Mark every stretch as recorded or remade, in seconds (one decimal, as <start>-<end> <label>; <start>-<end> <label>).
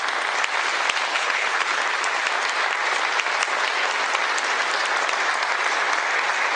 0.0-1.1 recorded; 1.1-1.8 remade; 1.8-6.6 recorded